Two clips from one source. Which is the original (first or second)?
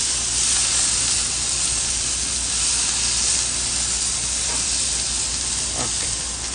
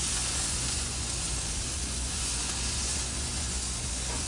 first